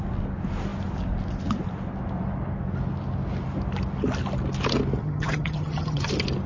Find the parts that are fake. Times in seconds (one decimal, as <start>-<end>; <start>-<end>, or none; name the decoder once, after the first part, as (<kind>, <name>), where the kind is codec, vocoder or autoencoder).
5.0-6.1 (vocoder, HiFi-GAN)